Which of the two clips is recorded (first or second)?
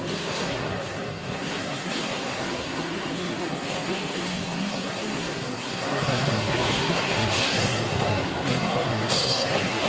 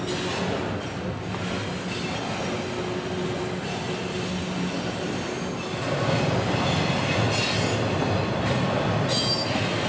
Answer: second